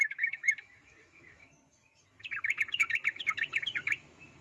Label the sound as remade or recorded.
remade